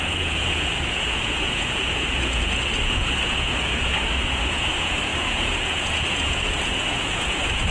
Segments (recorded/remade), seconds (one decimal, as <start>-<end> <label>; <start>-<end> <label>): 0.0-7.7 remade